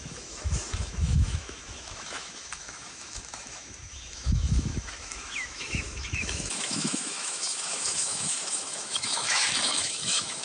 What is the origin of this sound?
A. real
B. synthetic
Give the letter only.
B